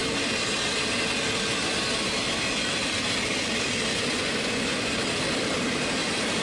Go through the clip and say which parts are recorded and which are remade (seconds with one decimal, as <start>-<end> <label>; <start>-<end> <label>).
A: 0.0-3.9 recorded; 3.9-5.0 remade; 5.0-6.4 recorded